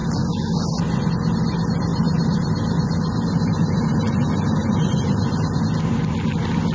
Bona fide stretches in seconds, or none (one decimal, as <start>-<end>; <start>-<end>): 0.0-1.9; 5.6-6.7